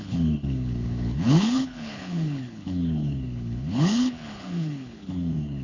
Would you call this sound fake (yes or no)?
yes